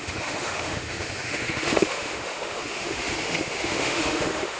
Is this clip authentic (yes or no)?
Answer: no